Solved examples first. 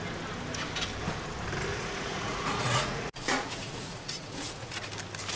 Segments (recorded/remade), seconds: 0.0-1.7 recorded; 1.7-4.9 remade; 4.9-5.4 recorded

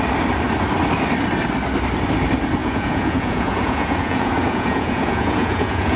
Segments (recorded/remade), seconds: 0.0-2.6 recorded; 2.6-6.0 remade

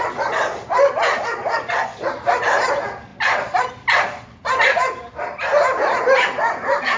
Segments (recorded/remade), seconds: 0.0-7.0 recorded

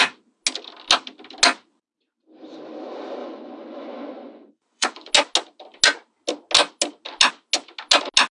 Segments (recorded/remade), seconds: 0.0-3.2 recorded; 3.2-5.1 remade; 5.1-8.3 recorded